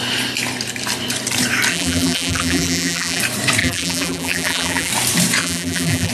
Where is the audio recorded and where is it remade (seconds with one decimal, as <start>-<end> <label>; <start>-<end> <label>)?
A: 0.0-1.7 recorded; 1.7-3.2 remade; 3.2-3.6 recorded; 3.6-4.9 remade; 4.9-5.4 recorded; 5.4-6.1 remade

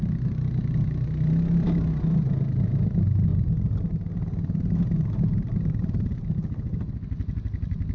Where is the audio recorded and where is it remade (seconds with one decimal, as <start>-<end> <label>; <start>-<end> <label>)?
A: 0.0-5.3 recorded; 5.3-6.1 remade; 6.1-7.9 recorded

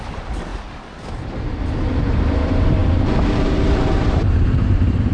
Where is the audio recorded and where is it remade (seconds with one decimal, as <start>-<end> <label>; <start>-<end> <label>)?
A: 0.0-0.5 remade; 0.5-2.0 recorded; 2.0-5.1 remade

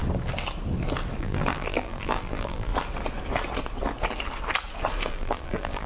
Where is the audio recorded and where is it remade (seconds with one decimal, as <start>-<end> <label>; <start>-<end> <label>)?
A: 0.0-1.2 recorded; 1.2-2.7 remade; 2.7-5.1 recorded; 5.1-5.9 remade